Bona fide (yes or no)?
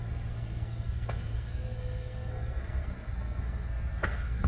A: no